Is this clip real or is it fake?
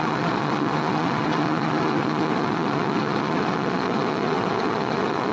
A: fake